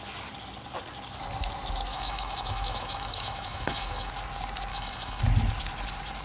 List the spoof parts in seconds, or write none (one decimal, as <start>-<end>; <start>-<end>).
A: 1.9-4.1; 4.7-5.2